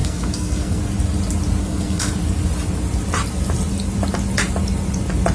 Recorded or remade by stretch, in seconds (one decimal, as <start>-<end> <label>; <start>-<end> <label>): 0.0-0.8 remade; 0.8-1.6 recorded; 1.6-2.1 remade; 2.1-5.3 recorded